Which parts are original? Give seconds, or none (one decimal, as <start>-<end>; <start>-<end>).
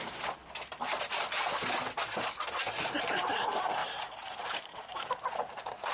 0.4-2.5; 3.8-4.4